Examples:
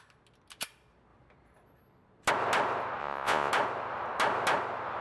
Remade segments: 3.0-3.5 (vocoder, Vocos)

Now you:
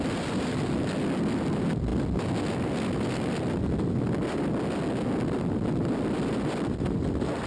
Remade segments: none

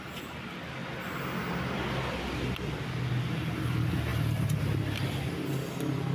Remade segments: none

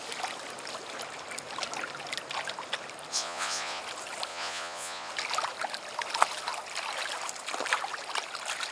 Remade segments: 3.1-3.8 (vocoder, Vocos); 4.3-5.1

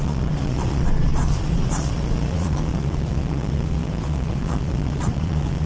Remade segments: 0.0-5.7 (vocoder, Vocos)